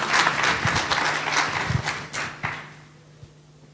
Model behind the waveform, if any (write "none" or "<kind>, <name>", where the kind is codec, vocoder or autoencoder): none